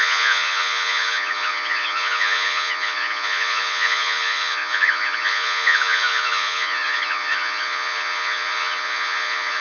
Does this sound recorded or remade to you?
remade